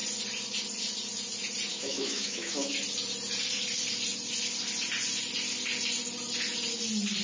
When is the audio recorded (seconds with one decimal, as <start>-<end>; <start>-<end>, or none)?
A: 0.0-1.7; 2.7-7.2